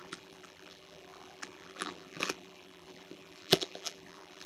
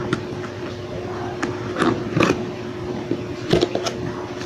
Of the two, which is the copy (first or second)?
first